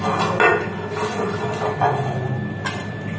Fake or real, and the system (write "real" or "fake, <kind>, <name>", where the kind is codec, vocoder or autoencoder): real